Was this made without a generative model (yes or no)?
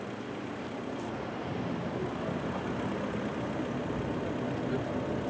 yes